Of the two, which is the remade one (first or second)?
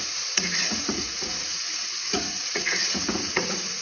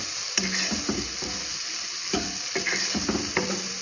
first